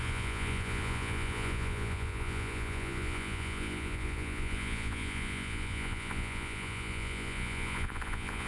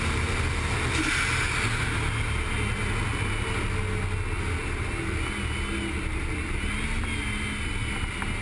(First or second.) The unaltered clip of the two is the second